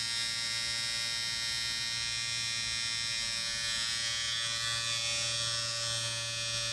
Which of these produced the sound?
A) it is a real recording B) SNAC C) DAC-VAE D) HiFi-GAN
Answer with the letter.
A